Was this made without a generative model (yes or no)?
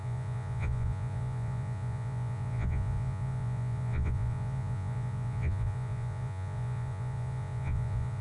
no